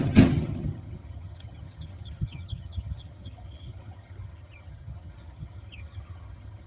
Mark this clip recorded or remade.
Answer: remade